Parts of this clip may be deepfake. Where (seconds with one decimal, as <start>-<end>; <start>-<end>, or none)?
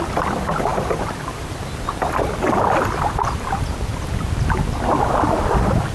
none